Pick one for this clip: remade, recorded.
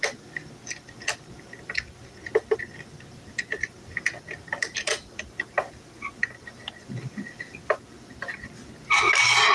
recorded